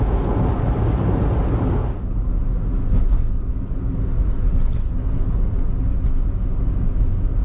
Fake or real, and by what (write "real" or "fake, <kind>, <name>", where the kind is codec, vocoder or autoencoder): real